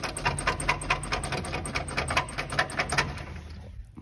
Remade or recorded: recorded